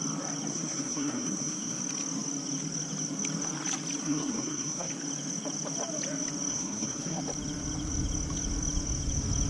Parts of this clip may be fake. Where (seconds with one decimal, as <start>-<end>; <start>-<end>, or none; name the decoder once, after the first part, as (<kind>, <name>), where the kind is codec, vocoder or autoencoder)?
0.5-1.8 (codec, SNAC); 4.0-4.9; 6.5-7.2